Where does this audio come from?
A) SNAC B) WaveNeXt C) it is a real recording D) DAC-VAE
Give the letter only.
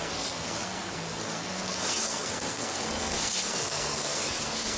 A